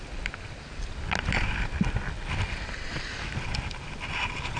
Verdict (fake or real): real